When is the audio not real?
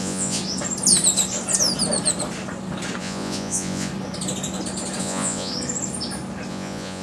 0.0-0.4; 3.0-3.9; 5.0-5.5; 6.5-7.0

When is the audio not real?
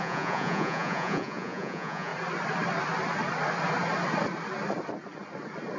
0.0-2.1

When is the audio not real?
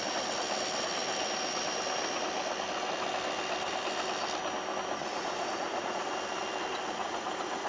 5.0-6.1; 7.0-7.7